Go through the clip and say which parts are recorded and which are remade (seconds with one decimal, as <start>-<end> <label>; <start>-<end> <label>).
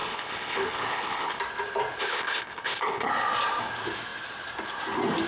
0.0-1.4 remade; 1.4-2.0 recorded; 2.0-3.1 remade; 3.1-5.3 recorded